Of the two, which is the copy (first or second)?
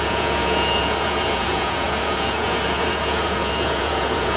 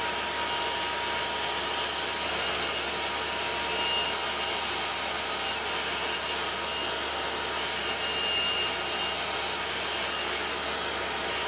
first